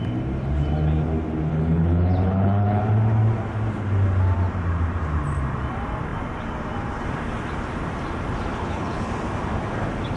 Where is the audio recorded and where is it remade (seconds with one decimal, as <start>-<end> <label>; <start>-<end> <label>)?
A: 0.0-1.5 recorded; 1.5-2.8 remade; 2.8-8.5 recorded; 8.5-9.1 remade; 9.1-10.2 recorded